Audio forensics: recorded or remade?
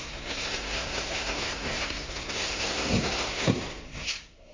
remade